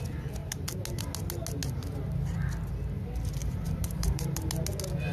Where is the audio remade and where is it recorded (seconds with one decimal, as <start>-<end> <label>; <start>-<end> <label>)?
0.0-3.4 recorded; 3.4-4.5 remade; 4.5-5.1 recorded